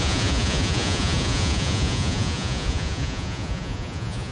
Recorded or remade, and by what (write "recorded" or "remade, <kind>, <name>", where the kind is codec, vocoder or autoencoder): remade, vocoder, Vocos